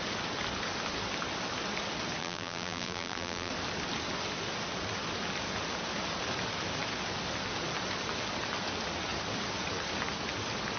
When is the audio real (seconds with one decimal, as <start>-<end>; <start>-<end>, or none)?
0.0-2.2; 3.5-10.8